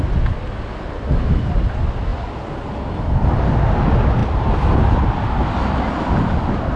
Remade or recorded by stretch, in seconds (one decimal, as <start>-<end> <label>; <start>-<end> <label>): 0.0-6.8 recorded